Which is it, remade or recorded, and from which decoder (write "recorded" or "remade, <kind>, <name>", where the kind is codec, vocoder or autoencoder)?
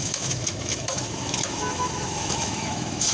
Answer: remade, autoencoder, DAC-VAE